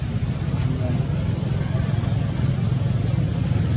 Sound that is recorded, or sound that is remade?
recorded